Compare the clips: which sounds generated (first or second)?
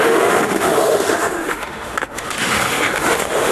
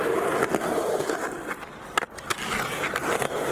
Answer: first